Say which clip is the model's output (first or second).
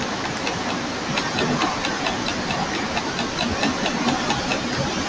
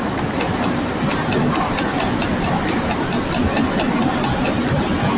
second